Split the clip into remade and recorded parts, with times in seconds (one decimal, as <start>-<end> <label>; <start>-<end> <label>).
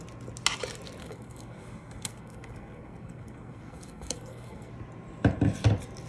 0.0-1.0 recorded; 1.0-4.7 remade; 4.7-6.1 recorded